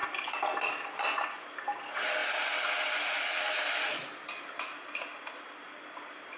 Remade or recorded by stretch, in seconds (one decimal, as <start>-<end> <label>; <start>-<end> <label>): 0.0-1.4 recorded; 1.4-2.2 remade; 2.2-5.8 recorded; 5.8-6.4 remade